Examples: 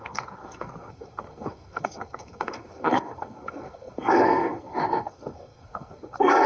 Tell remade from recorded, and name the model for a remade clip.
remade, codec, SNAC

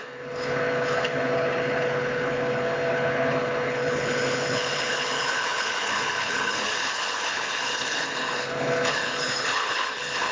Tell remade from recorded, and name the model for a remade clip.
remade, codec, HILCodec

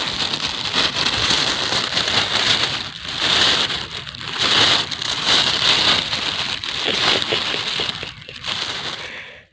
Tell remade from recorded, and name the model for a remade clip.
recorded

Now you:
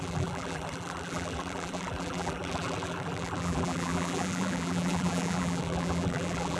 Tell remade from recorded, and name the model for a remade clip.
remade, vocoder, BigVGAN v2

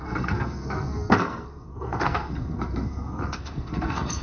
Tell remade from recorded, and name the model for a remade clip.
remade, codec, SNAC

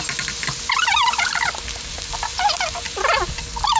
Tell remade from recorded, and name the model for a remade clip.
recorded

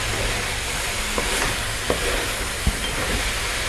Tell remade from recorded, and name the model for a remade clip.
recorded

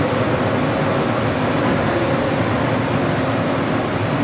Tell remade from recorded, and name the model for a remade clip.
recorded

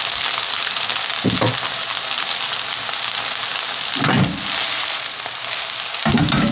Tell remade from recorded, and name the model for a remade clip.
recorded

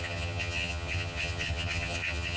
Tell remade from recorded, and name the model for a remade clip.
remade, vocoder, HiFi-GAN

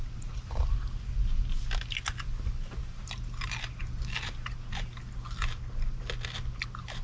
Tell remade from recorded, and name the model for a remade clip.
recorded